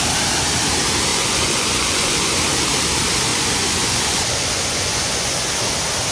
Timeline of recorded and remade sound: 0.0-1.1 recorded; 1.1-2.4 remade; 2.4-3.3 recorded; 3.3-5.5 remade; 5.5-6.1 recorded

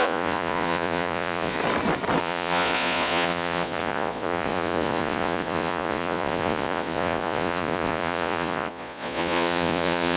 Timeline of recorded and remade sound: 0.0-1.6 remade; 1.6-2.2 recorded; 2.2-10.2 remade

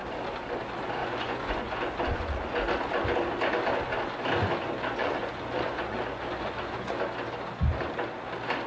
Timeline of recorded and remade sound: 0.0-1.0 recorded; 1.0-2.5 remade; 2.5-5.0 recorded; 5.0-7.0 remade; 7.0-8.7 recorded

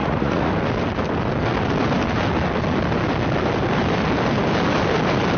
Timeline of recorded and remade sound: 0.0-0.5 remade; 0.5-5.4 recorded

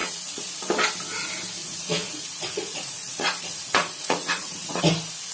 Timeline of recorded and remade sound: 0.0-0.6 remade; 0.6-1.6 recorded; 1.6-4.8 remade; 4.8-5.3 recorded

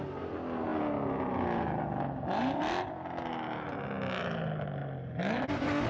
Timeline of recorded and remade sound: 0.0-5.9 recorded

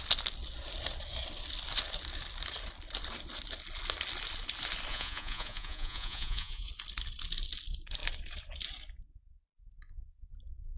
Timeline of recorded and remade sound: 0.0-4.9 recorded; 4.9-6.7 remade; 6.7-10.8 recorded

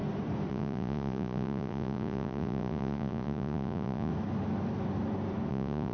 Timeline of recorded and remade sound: 0.0-0.5 recorded; 0.5-4.1 remade; 4.1-5.5 recorded; 5.5-5.9 remade